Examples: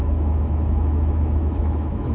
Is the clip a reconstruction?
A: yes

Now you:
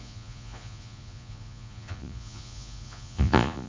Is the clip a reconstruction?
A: yes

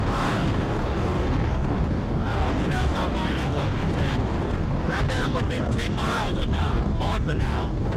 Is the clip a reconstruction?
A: yes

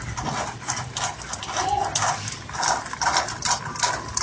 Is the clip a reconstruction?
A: no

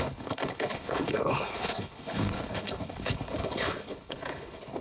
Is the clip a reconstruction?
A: yes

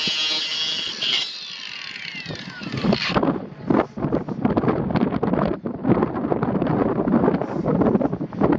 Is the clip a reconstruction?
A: no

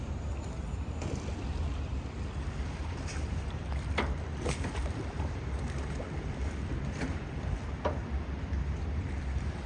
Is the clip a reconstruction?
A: yes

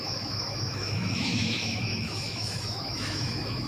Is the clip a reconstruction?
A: yes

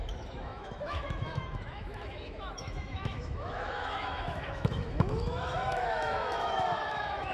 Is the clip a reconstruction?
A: yes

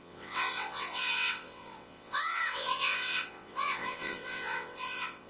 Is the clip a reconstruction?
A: yes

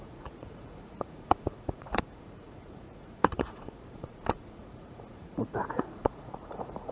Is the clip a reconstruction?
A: yes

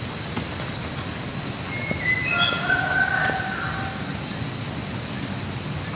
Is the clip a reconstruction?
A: no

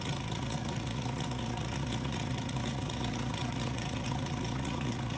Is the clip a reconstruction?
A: yes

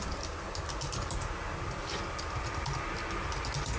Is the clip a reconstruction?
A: no